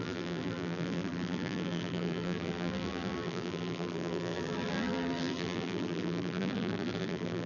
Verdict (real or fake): fake